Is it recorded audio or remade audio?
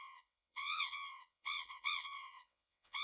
remade